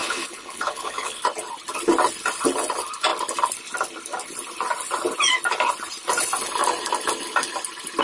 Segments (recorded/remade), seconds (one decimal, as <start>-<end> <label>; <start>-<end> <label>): 0.0-1.2 remade; 1.2-8.0 recorded